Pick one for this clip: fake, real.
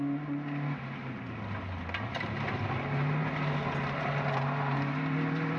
real